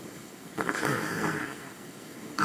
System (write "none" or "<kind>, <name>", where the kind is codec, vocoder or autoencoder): codec, SNAC